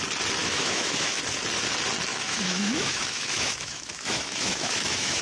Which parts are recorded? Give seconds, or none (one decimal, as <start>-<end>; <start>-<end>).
0.0-0.4; 1.2-2.1